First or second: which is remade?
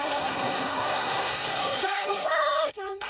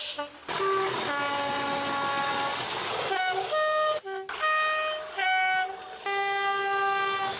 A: first